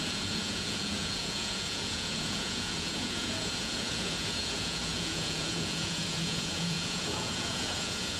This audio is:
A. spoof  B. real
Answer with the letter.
A